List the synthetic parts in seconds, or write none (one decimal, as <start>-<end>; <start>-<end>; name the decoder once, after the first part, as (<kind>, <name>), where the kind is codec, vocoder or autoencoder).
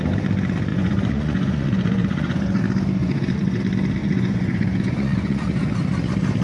0.7-2.6 (vocoder, Vocos); 3.0-3.6; 4.0-5.7